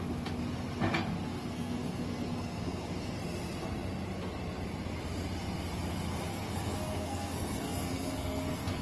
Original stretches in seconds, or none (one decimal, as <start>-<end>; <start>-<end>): 0.0-1.3; 3.2-6.3